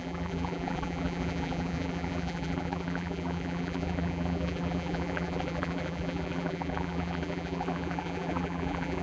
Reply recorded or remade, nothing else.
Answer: remade